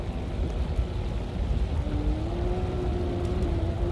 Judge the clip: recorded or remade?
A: recorded